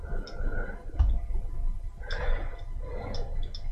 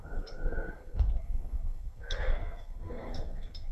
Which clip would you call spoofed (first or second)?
second